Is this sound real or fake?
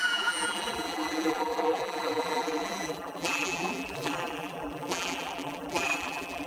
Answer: fake